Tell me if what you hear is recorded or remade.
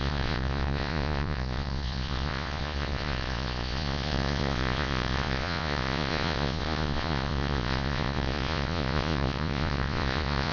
remade